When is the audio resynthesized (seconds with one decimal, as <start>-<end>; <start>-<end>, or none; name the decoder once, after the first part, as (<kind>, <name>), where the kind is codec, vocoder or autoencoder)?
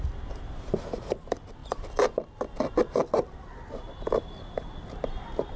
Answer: none